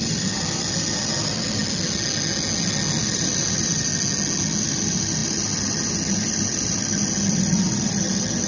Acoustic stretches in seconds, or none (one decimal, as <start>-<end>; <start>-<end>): 1.6-3.0; 3.9-4.6